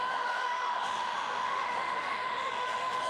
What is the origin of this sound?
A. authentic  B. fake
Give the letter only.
B